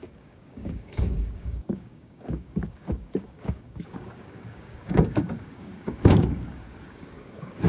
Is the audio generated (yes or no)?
yes